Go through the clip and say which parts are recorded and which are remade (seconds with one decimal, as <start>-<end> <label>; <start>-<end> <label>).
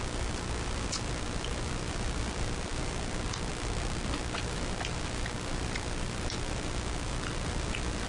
0.0-8.1 recorded